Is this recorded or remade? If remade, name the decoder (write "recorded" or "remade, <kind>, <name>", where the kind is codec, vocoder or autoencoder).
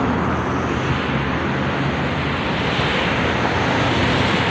recorded